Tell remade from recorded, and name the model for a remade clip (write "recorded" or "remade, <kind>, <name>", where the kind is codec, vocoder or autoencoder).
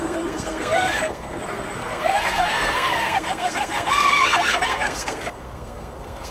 remade, codec, SNAC